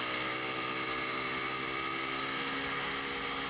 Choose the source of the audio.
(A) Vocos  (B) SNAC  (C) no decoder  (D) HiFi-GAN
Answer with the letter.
C